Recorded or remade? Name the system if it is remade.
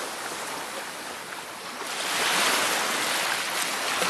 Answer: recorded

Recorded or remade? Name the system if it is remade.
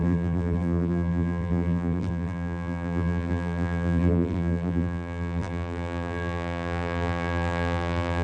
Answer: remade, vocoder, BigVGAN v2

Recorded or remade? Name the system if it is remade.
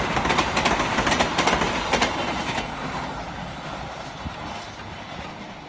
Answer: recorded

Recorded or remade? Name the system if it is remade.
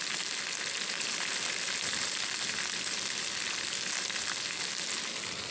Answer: recorded